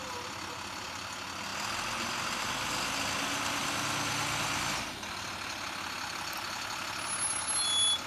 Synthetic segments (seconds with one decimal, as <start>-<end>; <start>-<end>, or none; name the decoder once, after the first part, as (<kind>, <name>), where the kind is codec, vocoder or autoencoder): none